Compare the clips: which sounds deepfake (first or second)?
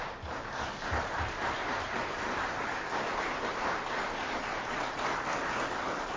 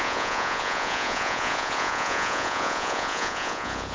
second